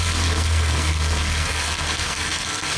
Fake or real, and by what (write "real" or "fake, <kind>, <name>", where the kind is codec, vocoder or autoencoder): fake, codec, SNAC